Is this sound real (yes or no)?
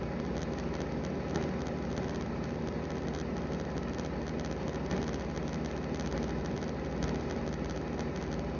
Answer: yes